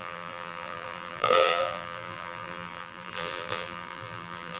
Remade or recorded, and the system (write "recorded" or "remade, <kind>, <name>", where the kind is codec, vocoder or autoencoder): remade, vocoder, BigVGAN v2